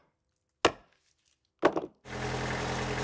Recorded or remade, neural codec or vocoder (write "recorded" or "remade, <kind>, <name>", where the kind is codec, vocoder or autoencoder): recorded